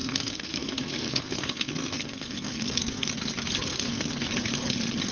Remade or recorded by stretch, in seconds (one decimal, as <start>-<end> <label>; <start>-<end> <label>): 0.0-3.1 remade; 3.1-3.7 recorded; 3.7-4.3 remade; 4.3-5.1 recorded